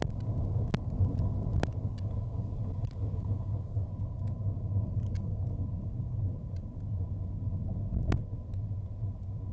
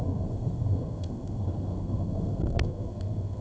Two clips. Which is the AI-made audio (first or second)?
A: second